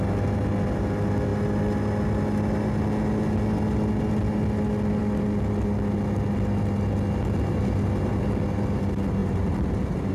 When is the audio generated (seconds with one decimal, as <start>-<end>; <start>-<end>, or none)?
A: 9.2-10.1